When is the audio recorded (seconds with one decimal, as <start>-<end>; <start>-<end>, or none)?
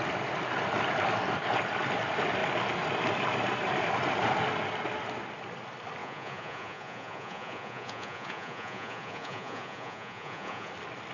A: 0.0-6.0; 10.7-11.1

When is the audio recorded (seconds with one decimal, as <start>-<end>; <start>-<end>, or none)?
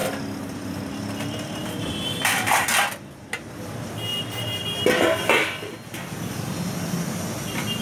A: 0.0-1.6; 2.6-4.1; 7.2-7.8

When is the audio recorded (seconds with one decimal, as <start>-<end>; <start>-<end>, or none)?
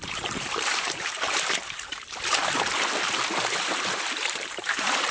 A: 1.9-4.5